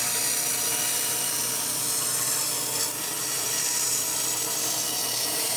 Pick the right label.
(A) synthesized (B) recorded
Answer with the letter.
A